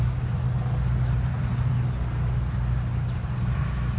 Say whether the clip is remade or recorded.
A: recorded